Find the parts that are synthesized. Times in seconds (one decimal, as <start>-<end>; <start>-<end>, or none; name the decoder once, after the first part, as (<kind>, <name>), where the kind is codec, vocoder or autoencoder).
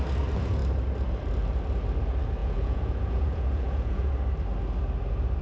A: 2.4-4.1 (vocoder, Vocos)